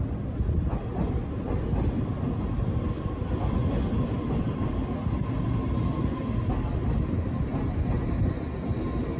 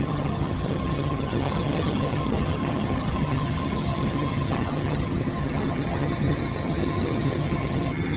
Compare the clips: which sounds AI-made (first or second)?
second